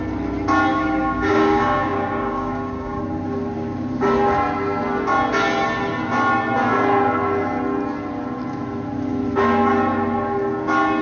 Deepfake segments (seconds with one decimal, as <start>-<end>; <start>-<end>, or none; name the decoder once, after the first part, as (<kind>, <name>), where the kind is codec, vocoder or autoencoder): 0.7-3.0 (codec, DAC)